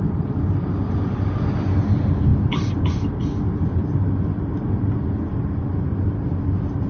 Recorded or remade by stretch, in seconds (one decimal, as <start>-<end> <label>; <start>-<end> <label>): 0.0-6.9 recorded